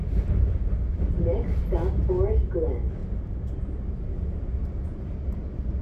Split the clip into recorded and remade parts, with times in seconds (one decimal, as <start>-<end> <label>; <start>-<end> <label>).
0.0-1.6 remade; 1.6-3.0 recorded; 3.0-4.1 remade; 4.1-5.8 recorded